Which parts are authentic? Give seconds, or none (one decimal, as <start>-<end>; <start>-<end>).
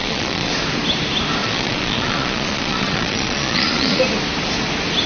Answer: 0.5-1.4; 4.0-5.1